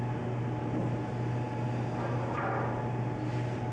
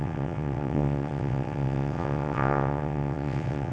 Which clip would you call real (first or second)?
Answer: first